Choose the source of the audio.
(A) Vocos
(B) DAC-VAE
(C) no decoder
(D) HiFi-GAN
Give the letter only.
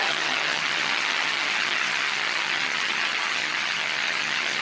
D